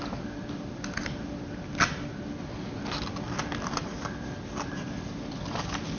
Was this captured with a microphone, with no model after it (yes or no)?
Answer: yes